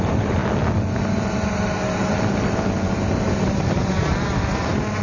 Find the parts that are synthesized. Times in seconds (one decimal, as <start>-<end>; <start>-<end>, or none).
0.0-0.4; 1.0-2.0; 3.1-5.0